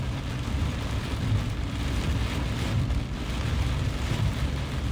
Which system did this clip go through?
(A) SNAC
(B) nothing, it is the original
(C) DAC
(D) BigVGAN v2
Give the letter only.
B